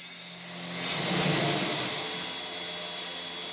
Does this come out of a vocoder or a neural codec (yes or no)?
no